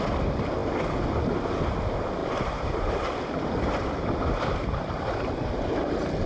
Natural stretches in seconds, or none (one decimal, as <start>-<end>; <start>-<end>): 0.0-2.2; 5.4-6.3

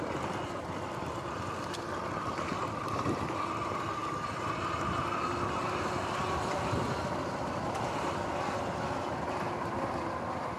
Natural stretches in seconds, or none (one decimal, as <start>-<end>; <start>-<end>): 0.0-10.6

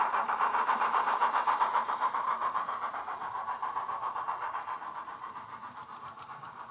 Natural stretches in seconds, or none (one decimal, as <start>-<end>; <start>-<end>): 2.4-2.9

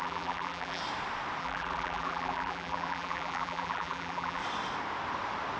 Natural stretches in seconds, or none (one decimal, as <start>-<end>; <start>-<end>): 0.8-1.4; 4.4-5.6

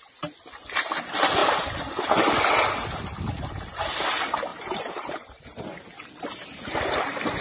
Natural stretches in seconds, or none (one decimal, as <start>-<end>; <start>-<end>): 0.0-4.5; 5.6-7.4

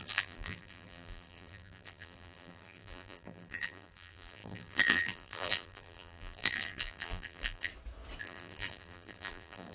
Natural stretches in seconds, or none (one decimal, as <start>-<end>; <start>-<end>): 7.7-8.2

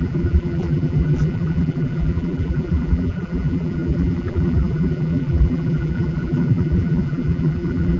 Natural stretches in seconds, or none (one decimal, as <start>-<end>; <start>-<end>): none

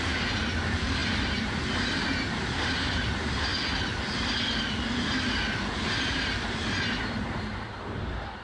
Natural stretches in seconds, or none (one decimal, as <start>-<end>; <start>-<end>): 3.5-5.8